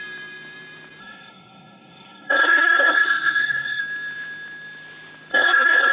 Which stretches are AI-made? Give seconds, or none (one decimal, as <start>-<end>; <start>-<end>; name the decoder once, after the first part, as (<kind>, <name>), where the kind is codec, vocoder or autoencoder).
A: 1.0-3.8 (codec, SNAC); 5.3-5.9